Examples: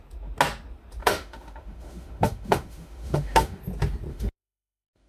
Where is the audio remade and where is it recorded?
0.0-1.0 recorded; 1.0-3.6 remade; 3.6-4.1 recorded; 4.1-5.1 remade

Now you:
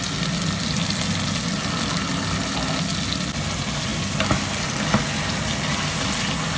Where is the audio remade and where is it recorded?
0.0-6.6 recorded

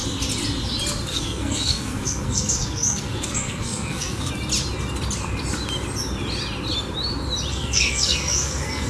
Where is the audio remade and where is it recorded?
0.0-1.1 recorded; 1.1-4.3 remade; 4.3-7.5 recorded; 7.5-8.9 remade

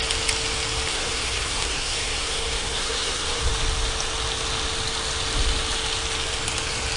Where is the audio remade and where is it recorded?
0.0-0.9 recorded; 0.9-3.5 remade; 3.5-7.0 recorded

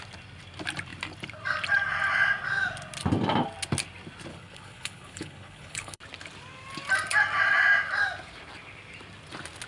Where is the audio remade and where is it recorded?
0.0-4.3 recorded; 4.3-6.0 remade; 6.0-9.7 recorded

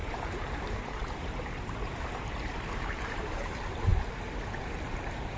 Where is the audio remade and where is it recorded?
0.0-3.9 remade; 3.9-4.6 recorded; 4.6-5.4 remade